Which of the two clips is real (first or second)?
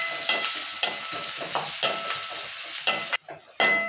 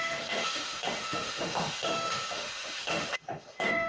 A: first